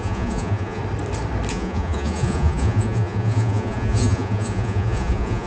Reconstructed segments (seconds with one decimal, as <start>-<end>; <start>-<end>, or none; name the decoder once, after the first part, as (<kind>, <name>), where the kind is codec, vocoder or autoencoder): 0.0-0.8 (vocoder, Vocos); 1.5-5.5